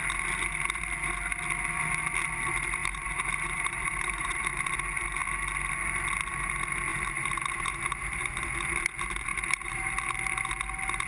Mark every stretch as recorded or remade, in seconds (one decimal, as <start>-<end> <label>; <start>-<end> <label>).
0.0-2.8 recorded; 2.8-4.6 remade; 4.6-6.9 recorded; 6.9-8.3 remade; 8.3-9.3 recorded; 9.3-9.9 remade; 9.9-11.1 recorded